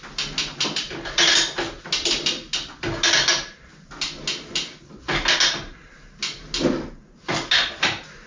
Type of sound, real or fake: real